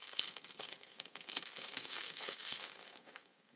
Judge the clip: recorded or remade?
remade